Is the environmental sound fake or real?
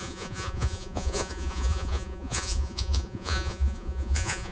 fake